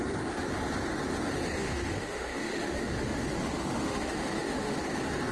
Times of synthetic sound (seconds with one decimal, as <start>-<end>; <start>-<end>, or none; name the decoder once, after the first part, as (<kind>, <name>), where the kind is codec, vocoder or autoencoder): 1.6-4.8 (autoencoder, DAC-VAE)